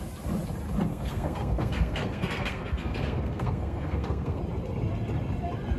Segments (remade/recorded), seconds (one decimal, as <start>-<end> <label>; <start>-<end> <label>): 0.0-0.9 recorded; 0.9-4.4 remade; 4.4-5.8 recorded